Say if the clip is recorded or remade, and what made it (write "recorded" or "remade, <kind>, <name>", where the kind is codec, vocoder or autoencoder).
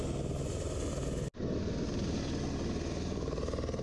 recorded